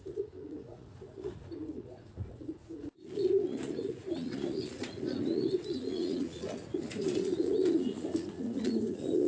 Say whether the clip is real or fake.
fake